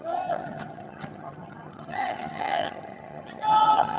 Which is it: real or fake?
fake